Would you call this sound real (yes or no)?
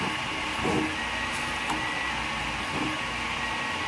no